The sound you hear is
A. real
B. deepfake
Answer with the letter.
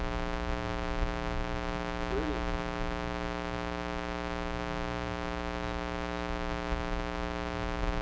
A